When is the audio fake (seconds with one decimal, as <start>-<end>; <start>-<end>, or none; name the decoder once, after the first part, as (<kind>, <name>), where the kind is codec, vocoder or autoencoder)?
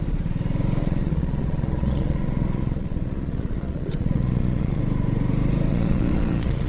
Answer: 0.8-4.8 (vocoder, Vocos); 5.7-6.7